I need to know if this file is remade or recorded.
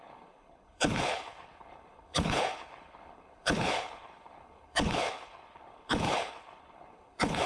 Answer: remade